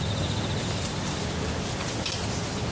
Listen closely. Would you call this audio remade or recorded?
recorded